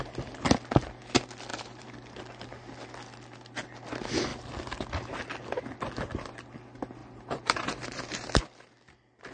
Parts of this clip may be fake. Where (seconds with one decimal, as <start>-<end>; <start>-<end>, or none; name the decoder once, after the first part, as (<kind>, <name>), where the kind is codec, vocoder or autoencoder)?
1.5-2.2 (vocoder, BigVGAN v2); 7.0-8.4